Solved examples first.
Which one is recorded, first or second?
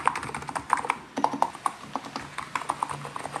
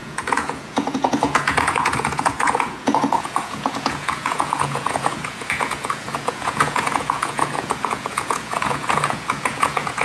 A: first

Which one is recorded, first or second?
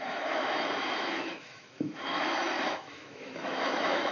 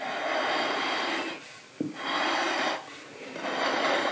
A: second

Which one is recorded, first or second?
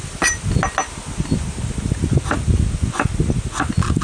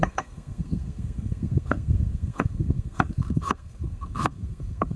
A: first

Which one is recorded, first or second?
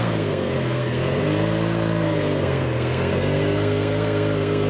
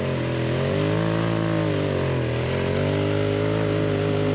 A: second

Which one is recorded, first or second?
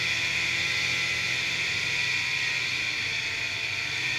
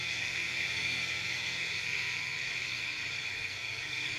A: first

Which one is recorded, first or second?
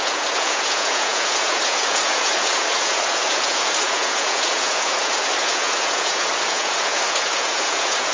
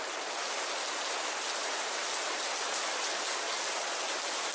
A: second